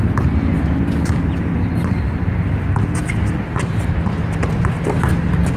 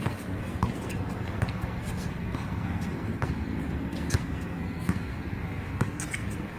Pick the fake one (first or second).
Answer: second